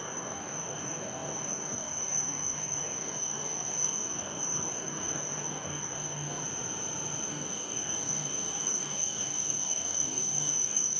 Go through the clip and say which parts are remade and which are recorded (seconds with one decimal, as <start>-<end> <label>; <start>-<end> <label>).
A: 0.0-6.4 remade; 6.4-7.3 recorded; 7.3-11.0 remade